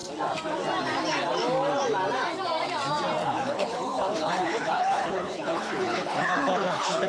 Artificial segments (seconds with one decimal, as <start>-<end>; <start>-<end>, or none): 3.2-7.1